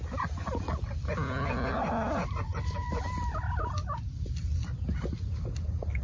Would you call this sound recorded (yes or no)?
yes